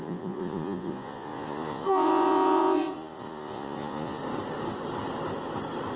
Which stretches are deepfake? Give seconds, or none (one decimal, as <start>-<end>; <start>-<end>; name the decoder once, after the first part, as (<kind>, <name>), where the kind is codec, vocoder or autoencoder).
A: 0.0-4.2 (vocoder, Vocos)